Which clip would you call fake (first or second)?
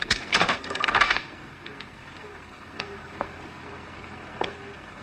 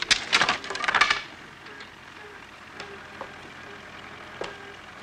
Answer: first